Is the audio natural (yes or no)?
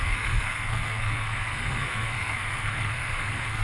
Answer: no